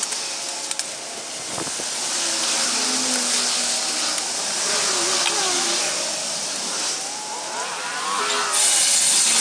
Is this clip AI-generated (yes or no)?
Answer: no